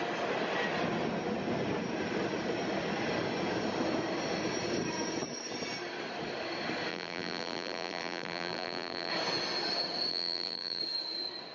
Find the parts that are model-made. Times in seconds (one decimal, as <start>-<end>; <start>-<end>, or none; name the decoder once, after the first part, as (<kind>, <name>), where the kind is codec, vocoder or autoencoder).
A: 6.9-9.1 (vocoder, BigVGAN v2); 10.1-10.8

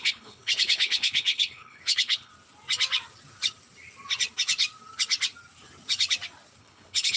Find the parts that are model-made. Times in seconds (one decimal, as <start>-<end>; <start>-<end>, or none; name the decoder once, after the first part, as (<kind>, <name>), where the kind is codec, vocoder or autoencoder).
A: 0.0-2.3 (codec, HILCodec); 6.6-7.2